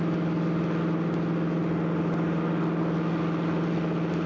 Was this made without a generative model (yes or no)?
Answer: yes